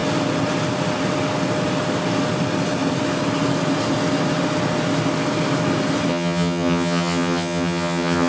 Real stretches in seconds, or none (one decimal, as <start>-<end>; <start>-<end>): 0.0-6.1

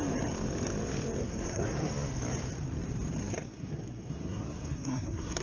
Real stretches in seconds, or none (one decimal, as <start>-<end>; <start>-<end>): 0.0-1.2; 1.9-3.2

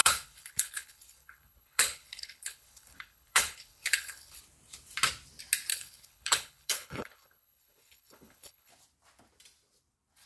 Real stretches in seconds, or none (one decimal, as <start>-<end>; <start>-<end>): 4.4-5.7; 8.7-10.3

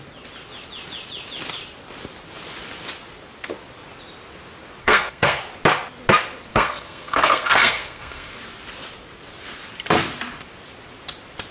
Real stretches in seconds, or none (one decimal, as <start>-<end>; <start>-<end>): 0.0-4.8; 5.4-6.5; 8.3-11.5

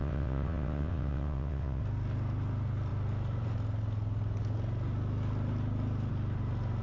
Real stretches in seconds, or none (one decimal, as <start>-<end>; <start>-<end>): 1.8-6.8

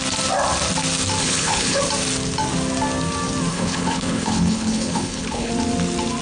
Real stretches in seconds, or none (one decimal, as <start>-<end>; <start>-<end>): 0.0-1.2; 1.8-3.5; 5.5-6.2

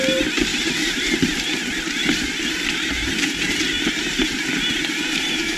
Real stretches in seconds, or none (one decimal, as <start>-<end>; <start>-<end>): 0.0-0.5; 1.5-2.0

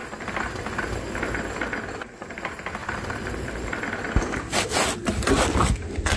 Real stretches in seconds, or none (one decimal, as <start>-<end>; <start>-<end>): 0.8-2.8; 3.8-6.2